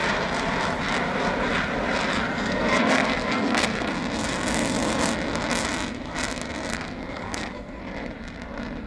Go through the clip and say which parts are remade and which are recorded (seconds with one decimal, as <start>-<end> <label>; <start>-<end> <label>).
0.0-2.1 recorded; 2.1-3.9 remade; 3.9-6.7 recorded; 6.7-7.8 remade; 7.8-8.9 recorded